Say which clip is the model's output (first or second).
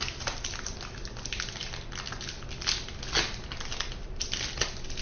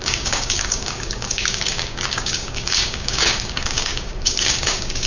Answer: second